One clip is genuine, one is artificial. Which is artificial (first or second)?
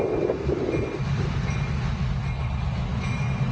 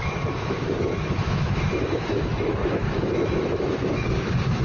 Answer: second